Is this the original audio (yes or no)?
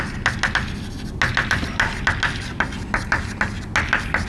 yes